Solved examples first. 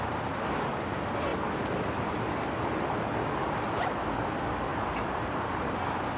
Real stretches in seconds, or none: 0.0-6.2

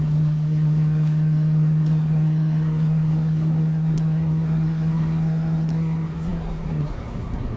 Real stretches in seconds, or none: none